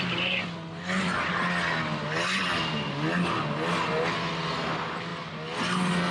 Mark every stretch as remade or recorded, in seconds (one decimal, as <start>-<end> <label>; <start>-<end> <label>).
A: 0.0-6.1 recorded